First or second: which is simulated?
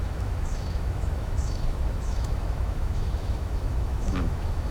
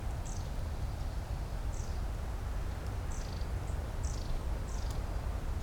first